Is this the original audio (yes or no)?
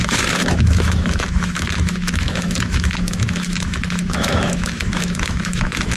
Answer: no